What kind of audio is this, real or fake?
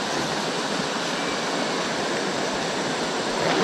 real